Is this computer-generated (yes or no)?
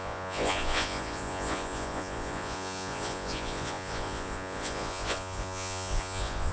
yes